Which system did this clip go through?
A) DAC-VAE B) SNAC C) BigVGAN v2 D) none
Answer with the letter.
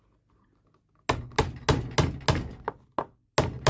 D